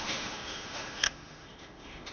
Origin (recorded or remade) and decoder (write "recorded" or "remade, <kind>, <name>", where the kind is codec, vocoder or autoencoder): remade, autoencoder, DAC-VAE